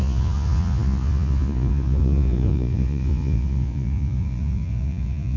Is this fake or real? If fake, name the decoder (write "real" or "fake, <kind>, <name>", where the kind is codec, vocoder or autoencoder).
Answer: fake, vocoder, Vocos